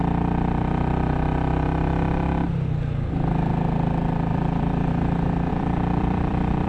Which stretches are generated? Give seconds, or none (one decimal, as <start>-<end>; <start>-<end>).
4.3-4.9; 5.5-6.7

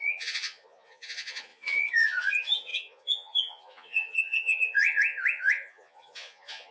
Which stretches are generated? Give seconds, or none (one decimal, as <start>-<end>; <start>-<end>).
0.0-6.7